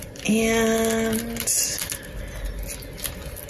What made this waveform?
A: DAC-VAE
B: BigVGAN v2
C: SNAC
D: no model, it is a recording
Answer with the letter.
D